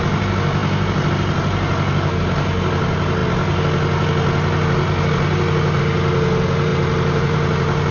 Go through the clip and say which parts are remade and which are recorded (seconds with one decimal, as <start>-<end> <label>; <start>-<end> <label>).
0.0-6.7 recorded; 6.7-7.9 remade